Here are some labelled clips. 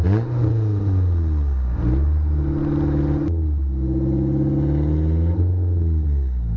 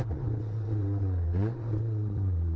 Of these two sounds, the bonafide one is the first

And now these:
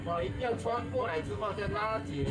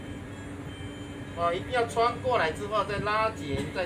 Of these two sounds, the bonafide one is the second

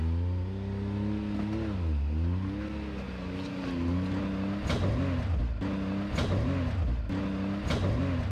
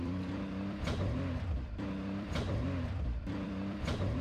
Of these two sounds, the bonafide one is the first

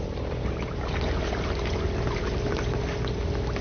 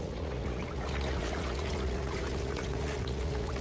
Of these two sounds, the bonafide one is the first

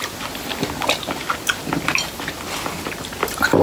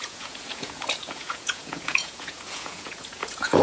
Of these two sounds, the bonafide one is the first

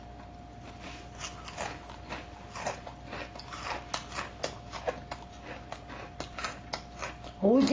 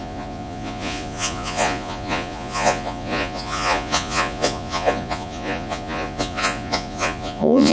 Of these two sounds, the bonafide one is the first